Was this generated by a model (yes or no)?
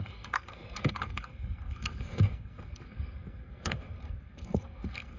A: yes